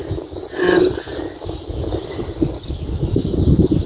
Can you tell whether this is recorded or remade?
recorded